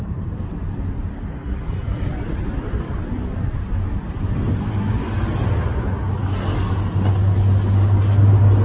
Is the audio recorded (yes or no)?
yes